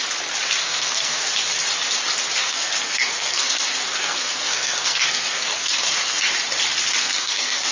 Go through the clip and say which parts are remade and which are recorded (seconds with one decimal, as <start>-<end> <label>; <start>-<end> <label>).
0.0-0.6 recorded; 0.6-1.3 remade; 1.3-2.4 recorded; 2.4-6.3 remade; 6.3-7.0 recorded; 7.0-7.7 remade